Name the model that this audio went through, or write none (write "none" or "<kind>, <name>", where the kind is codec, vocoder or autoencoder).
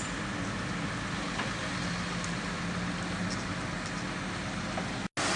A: none